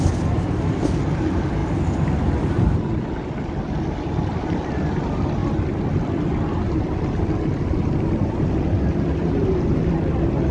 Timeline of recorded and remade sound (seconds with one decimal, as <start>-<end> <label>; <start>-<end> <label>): 0.0-10.5 recorded